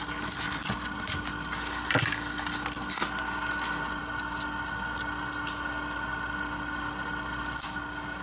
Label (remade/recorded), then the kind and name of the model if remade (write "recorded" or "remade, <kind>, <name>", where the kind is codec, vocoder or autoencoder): recorded